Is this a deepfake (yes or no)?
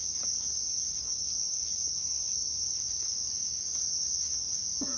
yes